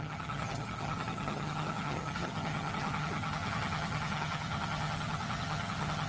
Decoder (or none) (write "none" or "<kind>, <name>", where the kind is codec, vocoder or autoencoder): vocoder, HiFi-GAN